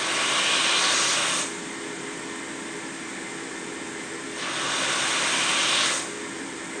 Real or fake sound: real